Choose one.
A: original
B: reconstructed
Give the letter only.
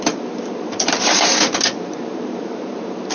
B